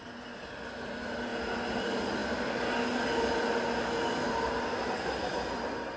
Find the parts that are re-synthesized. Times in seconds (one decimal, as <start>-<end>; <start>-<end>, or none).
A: none